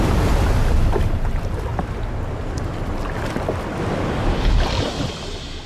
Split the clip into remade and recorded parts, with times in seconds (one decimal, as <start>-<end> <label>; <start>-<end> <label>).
0.0-5.7 recorded